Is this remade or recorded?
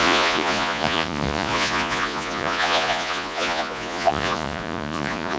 remade